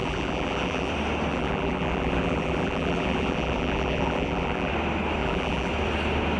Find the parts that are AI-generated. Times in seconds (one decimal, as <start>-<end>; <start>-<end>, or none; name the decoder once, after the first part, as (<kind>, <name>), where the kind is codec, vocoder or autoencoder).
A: 0.0-0.9 (vocoder, BigVGAN v2); 1.3-4.7; 5.2-5.7